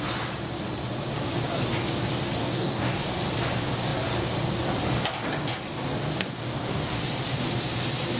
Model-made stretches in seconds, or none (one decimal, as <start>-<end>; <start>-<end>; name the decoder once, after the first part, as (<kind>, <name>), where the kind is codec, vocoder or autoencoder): 2.4-3.1 (codec, DAC); 6.1-7.0